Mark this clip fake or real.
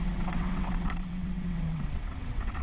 fake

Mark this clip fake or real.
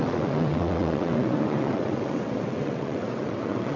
fake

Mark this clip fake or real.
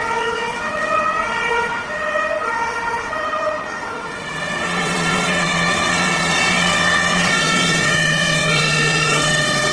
fake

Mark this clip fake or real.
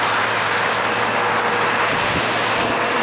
real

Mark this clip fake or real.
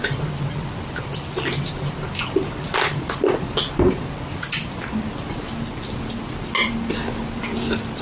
real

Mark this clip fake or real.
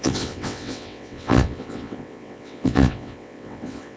fake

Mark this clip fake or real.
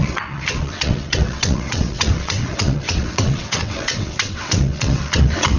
fake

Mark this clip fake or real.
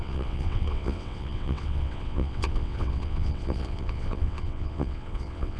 fake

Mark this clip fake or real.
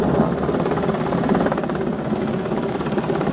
real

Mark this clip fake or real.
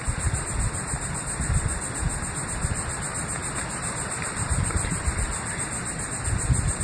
real